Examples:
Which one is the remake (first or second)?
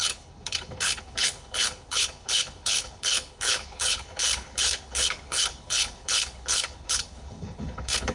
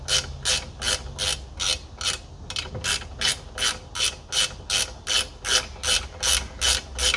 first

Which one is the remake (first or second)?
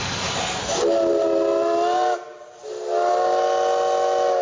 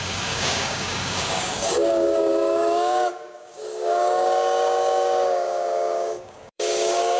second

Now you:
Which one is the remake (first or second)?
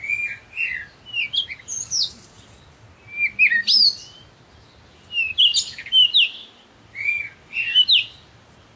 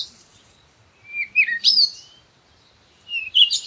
second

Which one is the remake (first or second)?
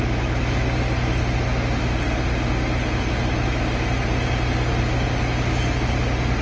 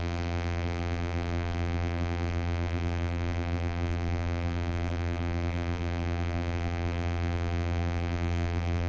second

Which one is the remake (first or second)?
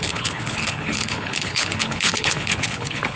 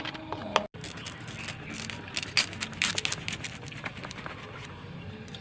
first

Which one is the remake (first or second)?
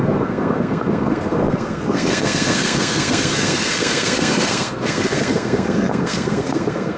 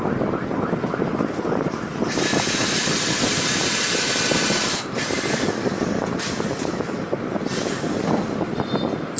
first